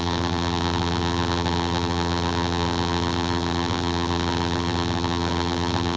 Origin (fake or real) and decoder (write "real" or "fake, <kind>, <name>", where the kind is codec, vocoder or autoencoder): fake, vocoder, BigVGAN v2